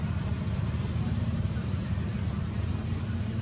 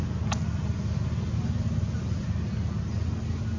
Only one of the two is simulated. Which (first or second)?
first